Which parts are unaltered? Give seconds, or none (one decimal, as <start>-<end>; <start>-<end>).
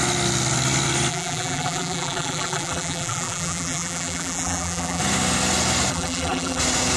0.0-1.1; 5.0-5.9; 6.6-7.0